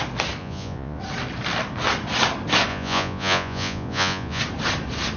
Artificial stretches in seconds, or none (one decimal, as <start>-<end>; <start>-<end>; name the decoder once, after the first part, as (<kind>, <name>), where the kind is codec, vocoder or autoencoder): 0.4-1.0 (vocoder, Vocos); 2.7-4.4